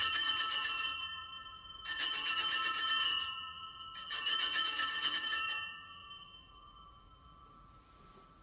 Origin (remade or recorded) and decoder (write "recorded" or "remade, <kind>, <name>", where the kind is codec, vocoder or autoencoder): remade, vocoder, Vocos